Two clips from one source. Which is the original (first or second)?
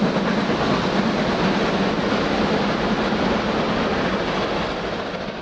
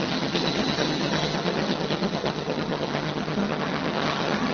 first